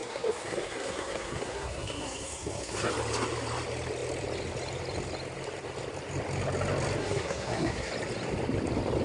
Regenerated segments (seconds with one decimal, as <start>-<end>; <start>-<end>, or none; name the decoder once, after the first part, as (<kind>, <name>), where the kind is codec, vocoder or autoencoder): 0.0-2.9 (codec, SNAC); 7.0-7.9